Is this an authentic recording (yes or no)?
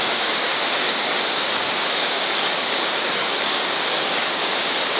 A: no